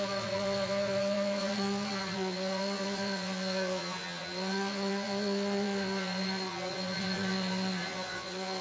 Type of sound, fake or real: fake